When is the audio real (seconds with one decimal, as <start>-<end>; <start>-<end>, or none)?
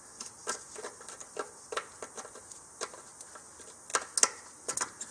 0.0-5.1